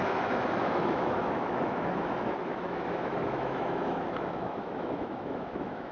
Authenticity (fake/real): fake